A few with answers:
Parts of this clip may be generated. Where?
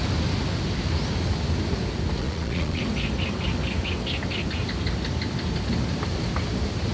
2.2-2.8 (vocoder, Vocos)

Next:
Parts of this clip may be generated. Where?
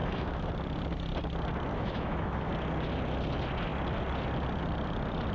0.0-0.5 (autoencoder, DAC-VAE); 1.7-2.5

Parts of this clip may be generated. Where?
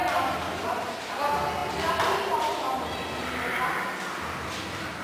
none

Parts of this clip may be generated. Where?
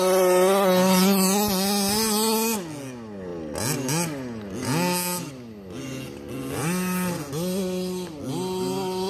none